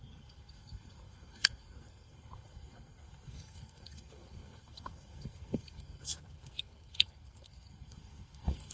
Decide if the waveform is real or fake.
fake